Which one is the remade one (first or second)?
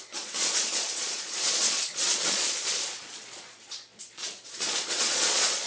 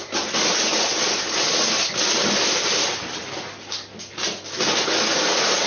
first